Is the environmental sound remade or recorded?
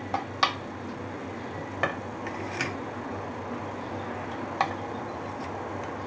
recorded